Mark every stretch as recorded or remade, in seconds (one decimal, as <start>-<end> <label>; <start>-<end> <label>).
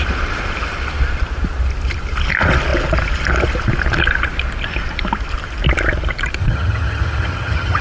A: 0.0-6.4 recorded; 6.4-7.8 remade